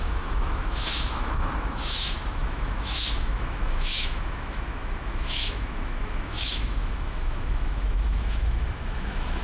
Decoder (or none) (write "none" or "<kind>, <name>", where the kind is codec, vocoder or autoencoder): autoencoder, DAC-VAE